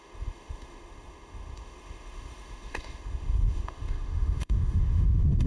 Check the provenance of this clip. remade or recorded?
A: remade